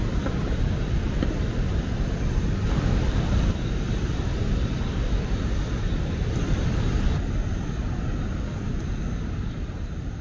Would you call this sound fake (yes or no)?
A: no